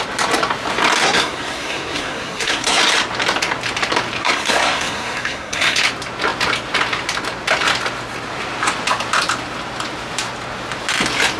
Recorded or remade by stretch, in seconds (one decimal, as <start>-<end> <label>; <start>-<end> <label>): 0.0-1.0 recorded; 1.0-2.8 remade; 2.8-4.2 recorded; 4.2-5.8 remade; 5.8-11.4 recorded